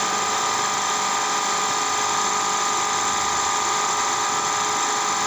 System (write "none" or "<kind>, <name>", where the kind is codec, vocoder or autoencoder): none